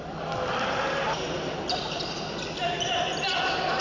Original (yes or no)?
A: yes